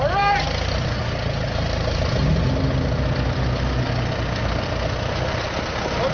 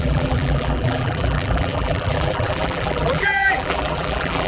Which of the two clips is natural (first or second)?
first